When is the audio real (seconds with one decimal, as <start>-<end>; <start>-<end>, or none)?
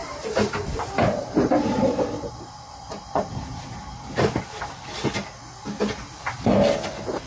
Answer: 4.4-7.3